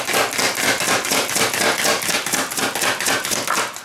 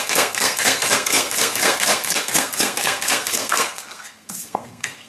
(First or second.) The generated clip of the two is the second